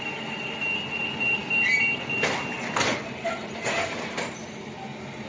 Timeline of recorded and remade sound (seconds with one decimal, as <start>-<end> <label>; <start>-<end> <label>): 0.0-5.3 recorded